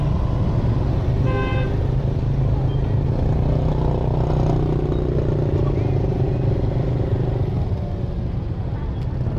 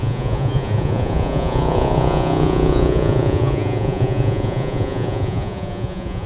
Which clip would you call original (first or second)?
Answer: first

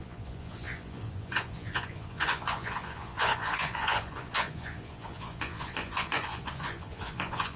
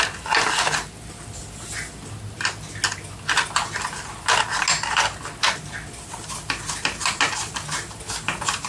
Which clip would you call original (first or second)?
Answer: second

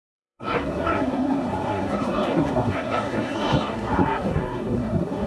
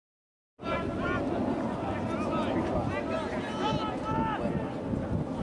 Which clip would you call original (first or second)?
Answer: second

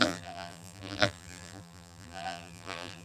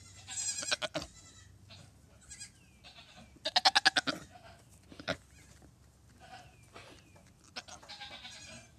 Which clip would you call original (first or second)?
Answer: second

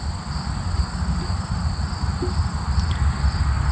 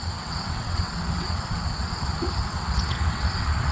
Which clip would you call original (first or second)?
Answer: first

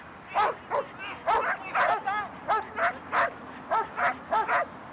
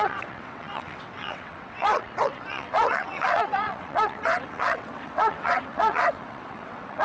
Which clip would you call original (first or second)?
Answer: first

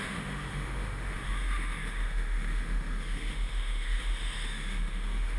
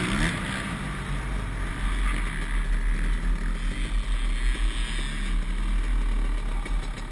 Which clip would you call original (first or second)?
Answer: second